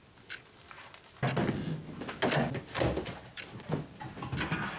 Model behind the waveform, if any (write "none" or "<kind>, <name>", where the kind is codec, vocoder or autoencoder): none